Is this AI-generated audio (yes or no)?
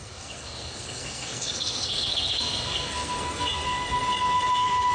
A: yes